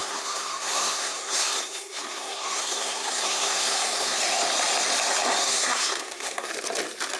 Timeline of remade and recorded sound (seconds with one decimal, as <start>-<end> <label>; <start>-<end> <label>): 0.0-4.2 remade; 4.2-5.4 recorded; 5.4-6.5 remade; 6.5-7.2 recorded